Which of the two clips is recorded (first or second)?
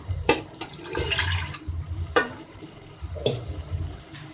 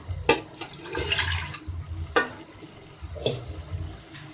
second